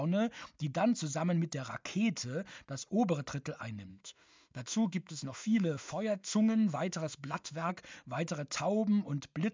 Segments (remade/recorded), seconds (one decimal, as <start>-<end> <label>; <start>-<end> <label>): 0.0-3.9 recorded; 3.9-7.7 remade; 7.7-9.5 recorded